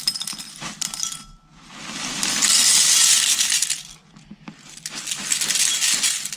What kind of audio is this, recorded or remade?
recorded